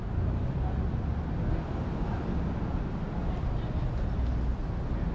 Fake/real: real